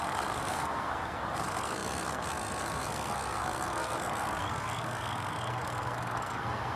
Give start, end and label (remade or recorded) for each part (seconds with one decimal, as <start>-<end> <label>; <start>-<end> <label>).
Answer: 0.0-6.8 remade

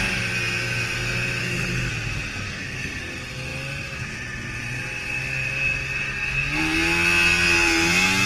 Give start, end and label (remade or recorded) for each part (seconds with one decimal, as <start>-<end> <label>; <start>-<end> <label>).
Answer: 0.0-1.4 recorded; 1.4-1.9 remade; 1.9-2.5 recorded; 2.5-3.0 remade; 3.0-8.3 recorded

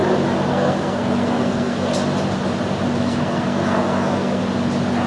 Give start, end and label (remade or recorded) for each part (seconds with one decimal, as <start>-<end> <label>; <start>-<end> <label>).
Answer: 0.0-0.5 recorded; 0.5-1.9 remade; 1.9-3.0 recorded; 3.0-4.4 remade; 4.4-5.1 recorded

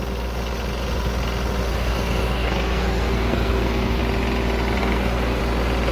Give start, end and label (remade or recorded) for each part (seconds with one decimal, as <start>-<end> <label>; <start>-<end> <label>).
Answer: 0.0-1.7 recorded; 1.7-4.0 remade; 4.0-4.8 recorded; 4.8-5.4 remade; 5.4-5.9 recorded

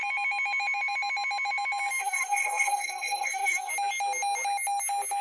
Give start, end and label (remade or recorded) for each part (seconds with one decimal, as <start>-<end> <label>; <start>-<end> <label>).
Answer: 0.0-2.0 recorded; 2.0-3.7 remade; 3.7-5.2 recorded

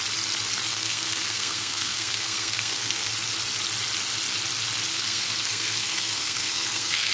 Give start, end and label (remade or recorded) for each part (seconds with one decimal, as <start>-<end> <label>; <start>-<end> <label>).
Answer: 0.0-0.7 recorded; 0.7-3.1 remade; 3.1-4.9 recorded; 4.9-7.1 remade

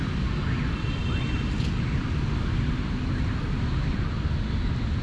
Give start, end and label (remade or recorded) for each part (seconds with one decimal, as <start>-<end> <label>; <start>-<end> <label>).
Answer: 0.0-5.0 recorded

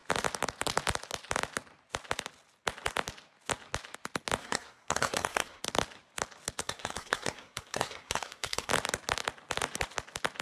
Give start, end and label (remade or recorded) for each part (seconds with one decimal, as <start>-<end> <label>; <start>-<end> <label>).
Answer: 0.0-4.4 recorded; 4.4-5.6 remade; 5.6-6.6 recorded; 6.6-8.7 remade; 8.7-10.4 recorded